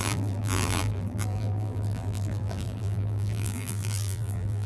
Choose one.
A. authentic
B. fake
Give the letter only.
B